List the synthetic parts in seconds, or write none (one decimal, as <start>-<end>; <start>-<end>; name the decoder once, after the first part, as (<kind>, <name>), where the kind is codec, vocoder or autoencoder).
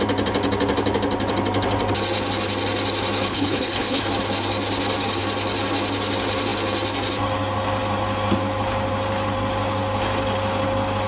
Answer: 3.3-4.0 (codec, HILCodec)